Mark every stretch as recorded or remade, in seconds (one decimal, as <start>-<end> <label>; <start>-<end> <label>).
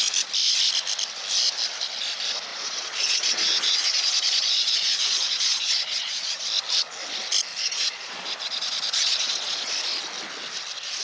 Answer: 0.0-2.5 recorded; 2.5-6.4 remade; 6.4-7.5 recorded; 7.5-9.7 remade; 9.7-11.0 recorded